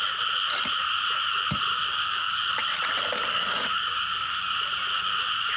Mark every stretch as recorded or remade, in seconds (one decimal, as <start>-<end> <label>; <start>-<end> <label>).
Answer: 0.0-1.7 recorded; 1.7-2.5 remade; 2.5-3.3 recorded; 3.3-4.3 remade; 4.3-5.6 recorded